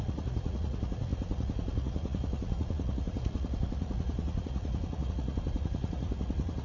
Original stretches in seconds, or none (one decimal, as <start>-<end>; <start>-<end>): none